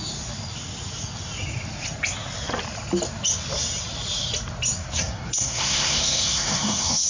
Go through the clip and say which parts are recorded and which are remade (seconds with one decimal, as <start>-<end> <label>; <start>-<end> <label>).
0.0-4.8 recorded; 4.8-7.1 remade